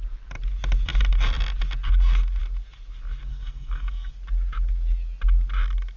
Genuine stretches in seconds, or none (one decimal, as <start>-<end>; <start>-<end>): 0.0-3.3; 4.1-6.0